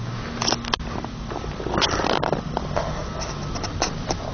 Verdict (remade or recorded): recorded